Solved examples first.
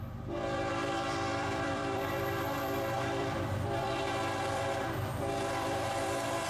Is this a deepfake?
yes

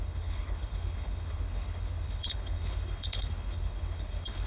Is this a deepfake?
yes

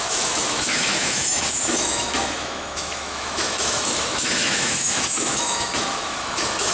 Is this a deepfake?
yes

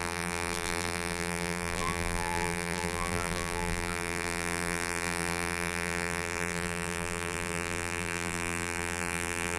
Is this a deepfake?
yes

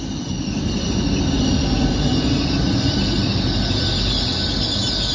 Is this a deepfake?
no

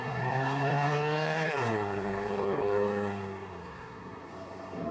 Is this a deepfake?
yes